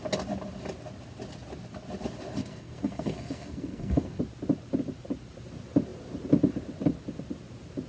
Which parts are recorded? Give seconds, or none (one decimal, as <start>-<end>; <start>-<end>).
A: 0.0-2.4; 4.2-7.9